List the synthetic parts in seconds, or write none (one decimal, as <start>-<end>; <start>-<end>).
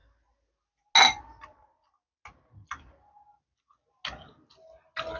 none